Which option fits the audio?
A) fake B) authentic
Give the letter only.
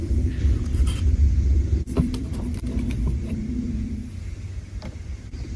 A